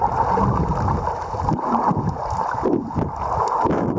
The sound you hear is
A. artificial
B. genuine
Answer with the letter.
B